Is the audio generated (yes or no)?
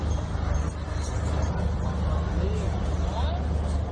no